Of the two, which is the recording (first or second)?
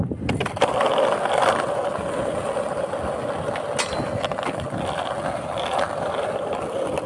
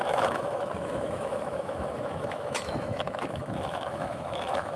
first